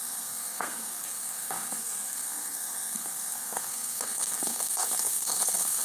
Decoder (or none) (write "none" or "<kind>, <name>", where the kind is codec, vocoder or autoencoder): codec, SNAC